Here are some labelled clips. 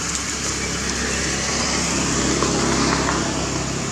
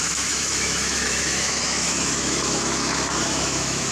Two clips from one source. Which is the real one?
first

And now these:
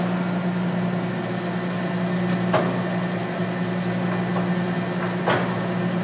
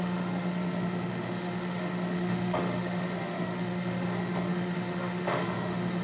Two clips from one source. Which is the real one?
first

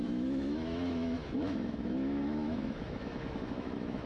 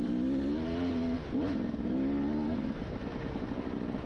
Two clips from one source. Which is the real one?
second